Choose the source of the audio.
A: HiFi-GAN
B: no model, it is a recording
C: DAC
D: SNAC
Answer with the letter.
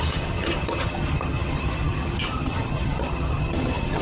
A